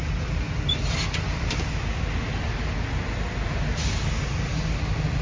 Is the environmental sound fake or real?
real